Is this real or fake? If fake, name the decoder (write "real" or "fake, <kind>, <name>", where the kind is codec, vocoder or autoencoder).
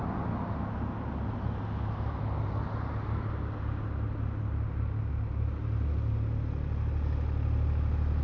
real